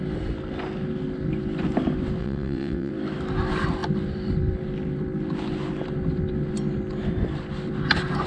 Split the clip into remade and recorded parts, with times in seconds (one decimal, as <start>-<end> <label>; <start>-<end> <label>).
0.0-2.2 recorded; 2.2-2.9 remade; 2.9-8.3 recorded